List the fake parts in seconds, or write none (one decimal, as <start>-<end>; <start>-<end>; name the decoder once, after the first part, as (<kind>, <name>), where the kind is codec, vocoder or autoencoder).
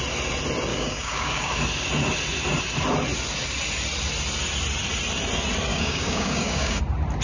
0.7-1.6 (codec, DAC); 5.7-6.8